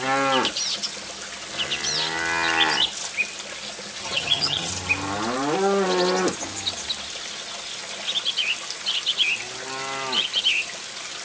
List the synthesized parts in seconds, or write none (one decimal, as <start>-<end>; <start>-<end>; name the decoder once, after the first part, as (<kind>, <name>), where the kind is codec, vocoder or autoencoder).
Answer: 4.0-4.7 (vocoder, HiFi-GAN)